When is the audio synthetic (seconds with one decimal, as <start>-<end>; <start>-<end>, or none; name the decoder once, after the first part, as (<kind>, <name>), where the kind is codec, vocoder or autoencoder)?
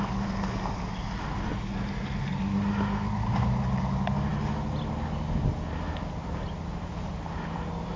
none